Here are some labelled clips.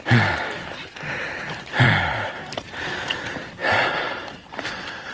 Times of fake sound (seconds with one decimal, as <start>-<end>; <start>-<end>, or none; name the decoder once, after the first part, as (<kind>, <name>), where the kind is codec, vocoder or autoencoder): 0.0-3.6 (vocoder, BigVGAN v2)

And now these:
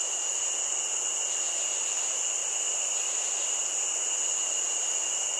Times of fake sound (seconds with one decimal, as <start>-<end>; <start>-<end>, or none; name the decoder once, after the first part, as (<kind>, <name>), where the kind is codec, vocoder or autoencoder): 2.4-3.0 (vocoder, BigVGAN v2)

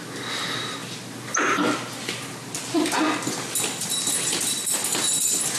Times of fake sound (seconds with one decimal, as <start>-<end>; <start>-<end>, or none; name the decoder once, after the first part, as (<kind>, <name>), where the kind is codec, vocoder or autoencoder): none

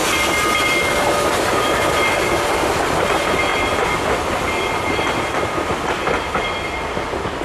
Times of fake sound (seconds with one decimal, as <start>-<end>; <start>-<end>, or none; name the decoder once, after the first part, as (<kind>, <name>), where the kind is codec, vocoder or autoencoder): none

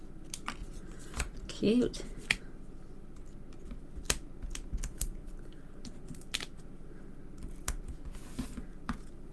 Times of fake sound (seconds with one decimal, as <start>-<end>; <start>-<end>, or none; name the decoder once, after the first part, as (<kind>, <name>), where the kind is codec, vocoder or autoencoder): 0.6-2.4 (vocoder, BigVGAN v2); 5.2-5.8

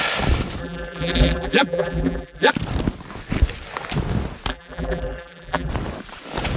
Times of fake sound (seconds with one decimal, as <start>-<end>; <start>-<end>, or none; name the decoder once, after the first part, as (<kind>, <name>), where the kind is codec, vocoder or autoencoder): 0.6-2.5 (vocoder, BigVGAN v2); 4.5-5.7

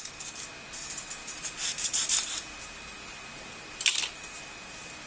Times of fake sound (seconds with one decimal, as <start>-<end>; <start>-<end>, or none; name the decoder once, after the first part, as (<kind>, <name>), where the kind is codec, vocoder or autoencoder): 1.2-4.1 (vocoder, BigVGAN v2)

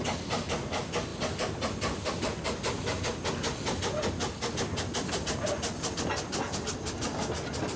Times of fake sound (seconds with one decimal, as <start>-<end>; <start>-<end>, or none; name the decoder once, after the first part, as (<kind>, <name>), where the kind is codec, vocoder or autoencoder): none